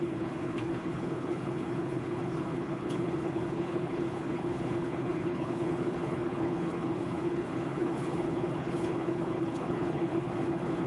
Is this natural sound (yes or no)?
no